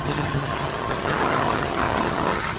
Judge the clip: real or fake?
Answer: fake